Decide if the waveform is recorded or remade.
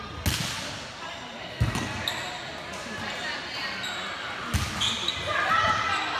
recorded